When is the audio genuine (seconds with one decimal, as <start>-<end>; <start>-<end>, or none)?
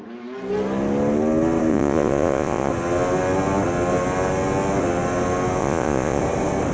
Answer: 0.0-1.7; 2.7-5.6; 6.2-6.7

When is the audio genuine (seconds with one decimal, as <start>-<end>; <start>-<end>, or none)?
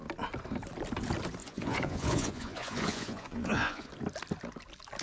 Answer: 0.0-1.4; 3.9-5.0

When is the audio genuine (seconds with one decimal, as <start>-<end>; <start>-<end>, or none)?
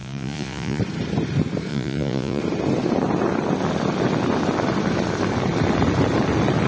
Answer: 0.8-1.7; 2.4-6.7